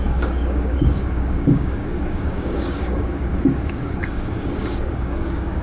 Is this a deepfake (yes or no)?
yes